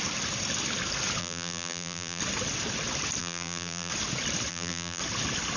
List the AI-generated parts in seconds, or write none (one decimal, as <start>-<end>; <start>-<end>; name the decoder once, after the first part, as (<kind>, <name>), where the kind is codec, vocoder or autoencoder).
1.2-2.2 (vocoder, BigVGAN v2); 3.2-3.9; 4.5-5.0

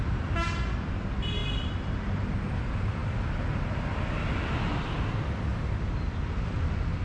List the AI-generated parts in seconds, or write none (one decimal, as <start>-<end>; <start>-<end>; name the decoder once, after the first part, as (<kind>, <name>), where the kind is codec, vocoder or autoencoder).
5.5-7.0 (vocoder, BigVGAN v2)

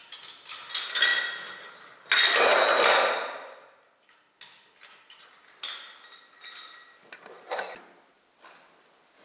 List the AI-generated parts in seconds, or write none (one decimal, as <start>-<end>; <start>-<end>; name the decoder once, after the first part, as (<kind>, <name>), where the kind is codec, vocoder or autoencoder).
none

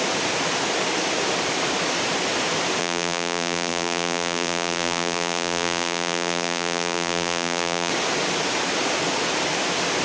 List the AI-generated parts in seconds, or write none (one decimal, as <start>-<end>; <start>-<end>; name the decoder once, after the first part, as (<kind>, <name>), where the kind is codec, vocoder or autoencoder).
2.8-7.9 (vocoder, BigVGAN v2)

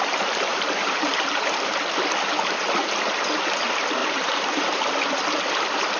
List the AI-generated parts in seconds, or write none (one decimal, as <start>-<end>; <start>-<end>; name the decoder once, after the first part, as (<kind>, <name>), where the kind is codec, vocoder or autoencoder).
0.5-1.3 (vocoder, BigVGAN v2); 4.0-4.8